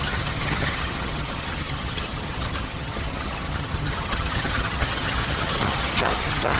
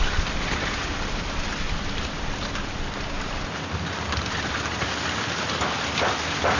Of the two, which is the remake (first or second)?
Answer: first